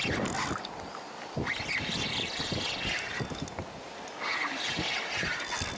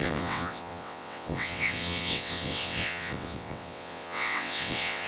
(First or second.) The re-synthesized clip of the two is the second